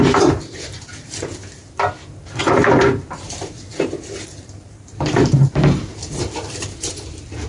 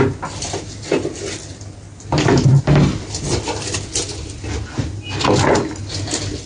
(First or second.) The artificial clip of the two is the first